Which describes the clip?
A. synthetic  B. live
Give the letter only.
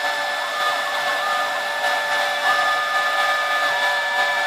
B